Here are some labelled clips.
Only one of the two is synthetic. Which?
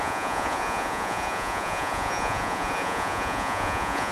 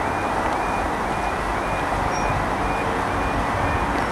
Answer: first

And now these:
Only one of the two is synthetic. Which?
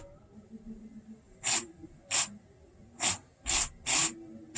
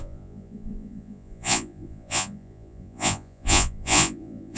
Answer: second